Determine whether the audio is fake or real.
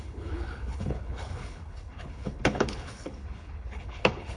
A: fake